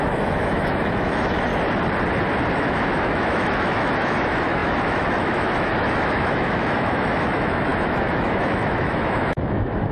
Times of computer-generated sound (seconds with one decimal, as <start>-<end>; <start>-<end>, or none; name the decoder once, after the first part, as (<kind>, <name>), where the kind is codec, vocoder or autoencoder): 0.0-1.5 (autoencoder, DAC-VAE); 2.5-9.9